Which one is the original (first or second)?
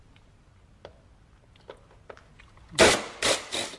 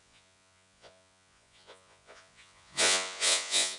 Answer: first